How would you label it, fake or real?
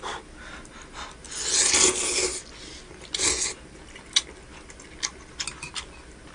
real